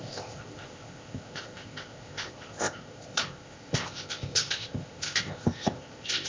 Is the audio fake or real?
fake